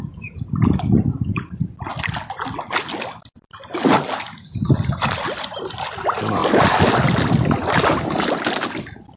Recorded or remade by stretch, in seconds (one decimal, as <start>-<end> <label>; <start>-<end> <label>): 0.0-9.2 recorded